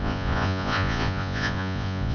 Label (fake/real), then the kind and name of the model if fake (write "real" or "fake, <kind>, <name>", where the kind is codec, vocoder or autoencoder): fake, vocoder, Vocos